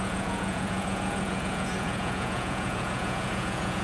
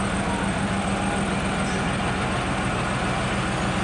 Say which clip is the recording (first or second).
second